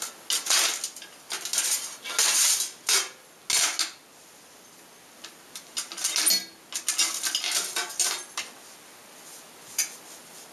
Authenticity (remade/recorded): recorded